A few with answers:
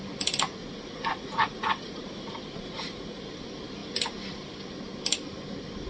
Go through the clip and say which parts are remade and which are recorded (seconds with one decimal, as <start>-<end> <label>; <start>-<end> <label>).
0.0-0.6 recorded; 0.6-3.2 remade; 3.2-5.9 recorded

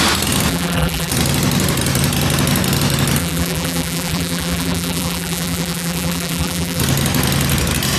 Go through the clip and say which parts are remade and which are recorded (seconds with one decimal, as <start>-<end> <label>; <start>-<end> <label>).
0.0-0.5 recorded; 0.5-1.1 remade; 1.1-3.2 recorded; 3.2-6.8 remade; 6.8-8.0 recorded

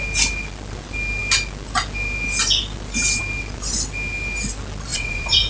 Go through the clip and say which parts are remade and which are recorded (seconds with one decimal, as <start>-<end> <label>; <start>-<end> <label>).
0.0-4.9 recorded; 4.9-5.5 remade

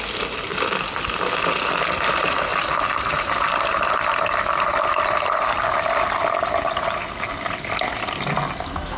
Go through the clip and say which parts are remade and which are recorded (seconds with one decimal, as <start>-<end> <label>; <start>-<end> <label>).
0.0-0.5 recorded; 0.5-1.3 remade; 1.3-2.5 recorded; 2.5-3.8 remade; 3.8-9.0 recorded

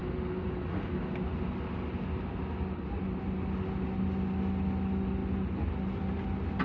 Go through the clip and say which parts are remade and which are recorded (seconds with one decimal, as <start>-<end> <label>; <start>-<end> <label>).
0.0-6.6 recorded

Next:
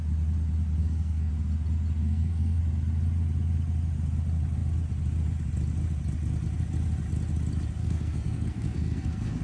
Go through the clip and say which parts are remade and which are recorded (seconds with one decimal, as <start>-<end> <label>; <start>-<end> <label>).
0.0-0.8 recorded; 0.8-1.3 remade; 1.3-2.0 recorded; 2.0-2.6 remade; 2.6-7.8 recorded; 7.8-9.4 remade